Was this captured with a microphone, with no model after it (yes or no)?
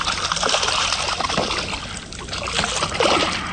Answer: yes